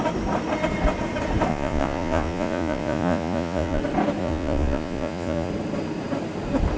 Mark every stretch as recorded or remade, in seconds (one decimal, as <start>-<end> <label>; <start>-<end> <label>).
0.0-1.5 recorded; 1.5-3.8 remade; 3.8-4.2 recorded; 4.2-5.5 remade; 5.5-6.8 recorded